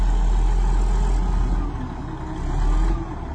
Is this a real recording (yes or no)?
yes